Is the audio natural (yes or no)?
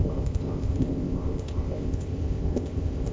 no